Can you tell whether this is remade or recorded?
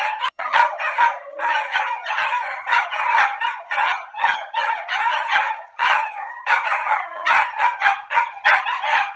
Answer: remade